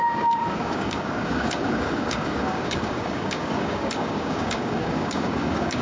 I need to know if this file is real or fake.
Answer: fake